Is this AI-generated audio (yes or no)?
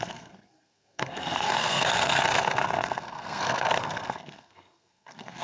yes